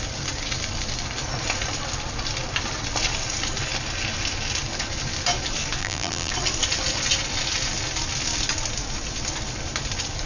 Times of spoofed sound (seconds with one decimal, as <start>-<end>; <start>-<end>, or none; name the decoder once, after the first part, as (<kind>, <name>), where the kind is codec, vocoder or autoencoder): 5.8-6.3 (vocoder, BigVGAN v2)